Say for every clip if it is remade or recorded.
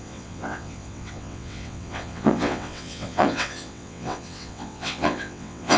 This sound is remade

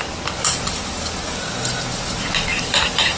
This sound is recorded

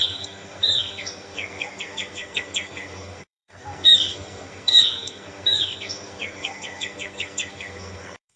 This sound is remade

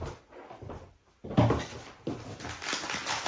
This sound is recorded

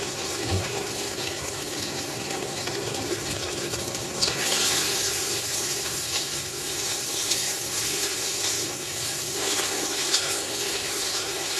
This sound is remade